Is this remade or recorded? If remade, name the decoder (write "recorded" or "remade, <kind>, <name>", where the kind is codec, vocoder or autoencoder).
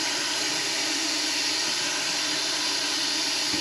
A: recorded